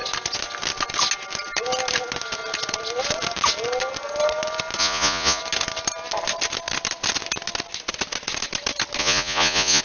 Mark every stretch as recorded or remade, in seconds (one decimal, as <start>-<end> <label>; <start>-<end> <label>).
0.0-4.8 recorded; 4.8-5.4 remade; 5.4-9.0 recorded; 9.0-9.8 remade